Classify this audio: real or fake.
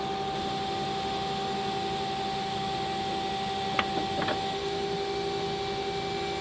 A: real